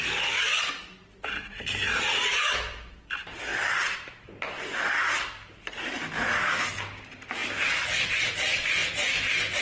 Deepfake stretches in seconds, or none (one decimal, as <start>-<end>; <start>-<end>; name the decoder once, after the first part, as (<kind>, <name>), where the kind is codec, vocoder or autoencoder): none